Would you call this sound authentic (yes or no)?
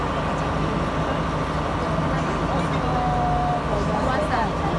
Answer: yes